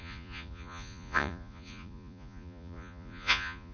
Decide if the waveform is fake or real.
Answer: fake